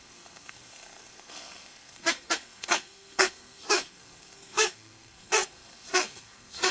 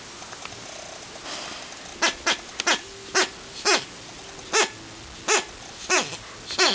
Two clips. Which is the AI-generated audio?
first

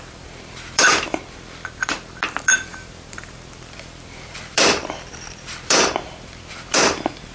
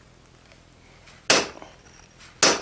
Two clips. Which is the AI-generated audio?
first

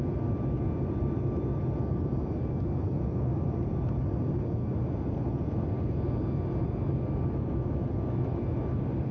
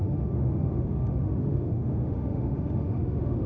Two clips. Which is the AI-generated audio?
second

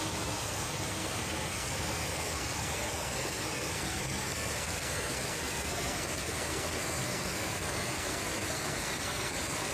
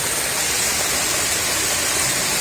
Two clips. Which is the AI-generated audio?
first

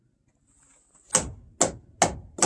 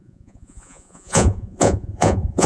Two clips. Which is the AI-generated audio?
second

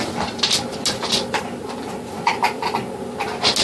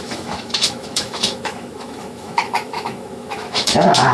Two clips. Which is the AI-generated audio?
second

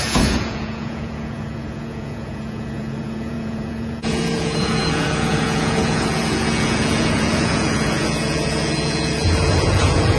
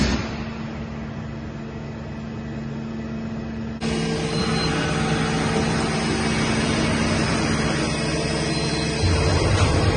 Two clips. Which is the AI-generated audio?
first